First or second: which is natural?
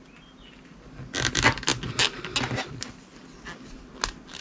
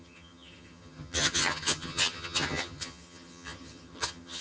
first